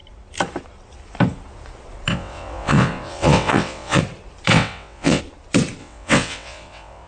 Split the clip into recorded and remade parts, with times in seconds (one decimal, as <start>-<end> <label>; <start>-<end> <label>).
0.0-2.1 recorded; 2.1-4.0 remade; 4.0-4.5 recorded; 4.5-5.2 remade; 5.2-5.8 recorded; 5.8-7.1 remade